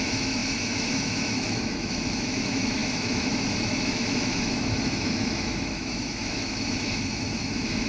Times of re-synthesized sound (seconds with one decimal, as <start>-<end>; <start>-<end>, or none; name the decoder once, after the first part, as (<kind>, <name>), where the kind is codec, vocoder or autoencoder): 0.0-7.9 (autoencoder, DAC-VAE)